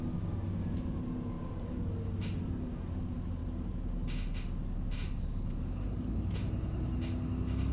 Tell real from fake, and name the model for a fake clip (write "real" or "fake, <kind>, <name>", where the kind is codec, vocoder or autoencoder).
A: real